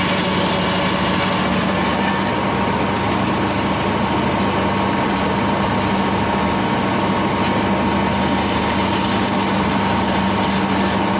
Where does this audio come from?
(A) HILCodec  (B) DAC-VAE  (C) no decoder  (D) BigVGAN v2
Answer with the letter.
C